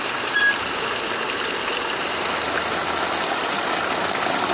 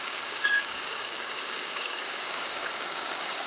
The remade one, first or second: second